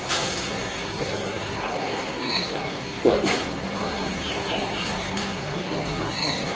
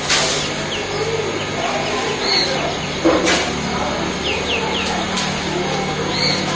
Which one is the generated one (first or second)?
first